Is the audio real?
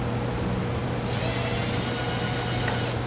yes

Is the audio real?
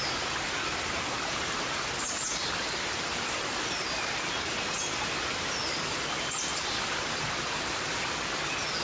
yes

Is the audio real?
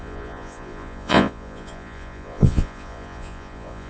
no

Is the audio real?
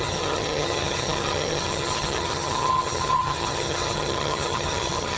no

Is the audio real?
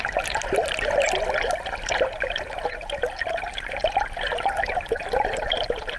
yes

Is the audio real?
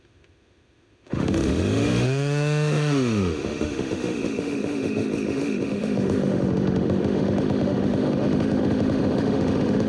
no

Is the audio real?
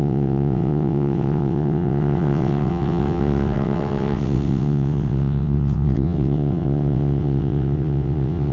no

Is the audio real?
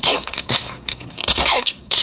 no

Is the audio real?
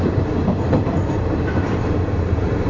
no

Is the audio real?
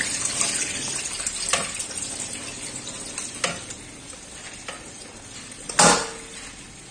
yes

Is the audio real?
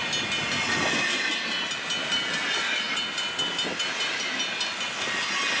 yes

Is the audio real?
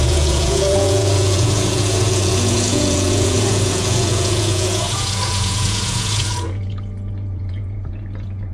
no